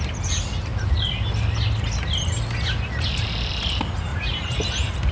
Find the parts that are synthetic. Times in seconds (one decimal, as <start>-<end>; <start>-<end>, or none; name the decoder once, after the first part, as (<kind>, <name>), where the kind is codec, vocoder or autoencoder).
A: 4.1-5.1 (vocoder, BigVGAN v2)